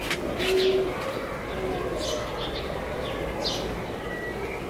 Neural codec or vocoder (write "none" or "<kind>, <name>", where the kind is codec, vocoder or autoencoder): none